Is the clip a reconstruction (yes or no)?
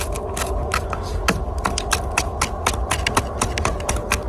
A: no